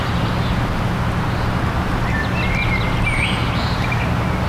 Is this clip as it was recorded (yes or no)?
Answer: yes